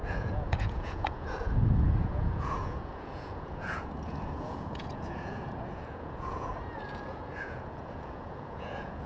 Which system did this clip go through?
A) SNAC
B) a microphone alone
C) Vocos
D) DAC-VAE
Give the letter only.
C